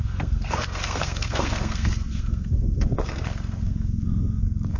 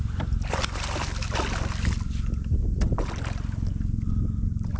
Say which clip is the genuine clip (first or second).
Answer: second